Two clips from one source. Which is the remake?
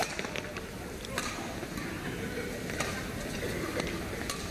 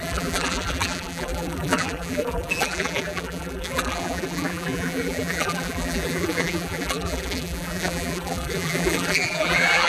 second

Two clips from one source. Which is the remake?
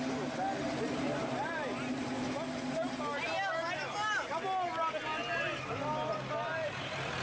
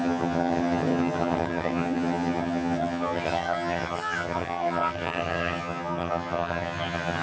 second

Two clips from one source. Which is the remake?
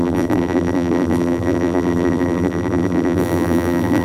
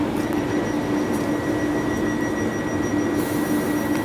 first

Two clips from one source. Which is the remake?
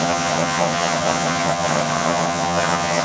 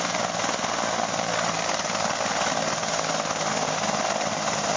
first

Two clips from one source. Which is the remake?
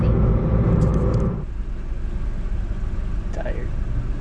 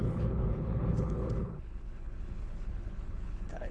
second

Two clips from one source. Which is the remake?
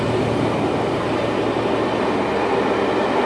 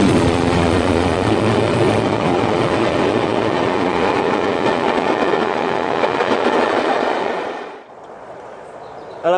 second